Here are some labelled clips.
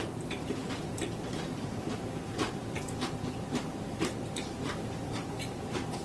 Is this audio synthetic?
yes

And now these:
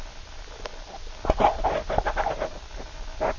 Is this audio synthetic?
no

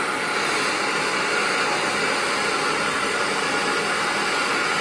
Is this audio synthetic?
no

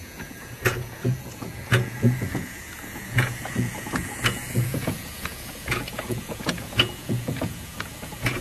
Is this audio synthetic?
yes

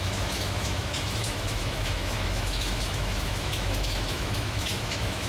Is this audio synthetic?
yes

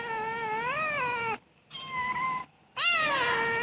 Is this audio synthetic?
yes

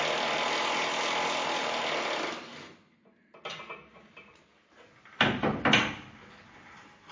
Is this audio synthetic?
no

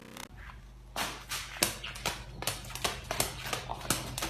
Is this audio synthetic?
no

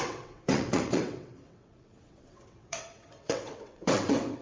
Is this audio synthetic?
yes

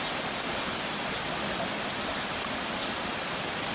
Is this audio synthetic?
no